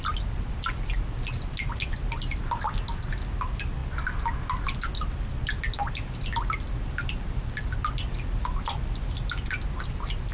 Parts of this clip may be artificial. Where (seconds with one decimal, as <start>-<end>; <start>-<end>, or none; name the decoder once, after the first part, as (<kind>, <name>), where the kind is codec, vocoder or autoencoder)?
none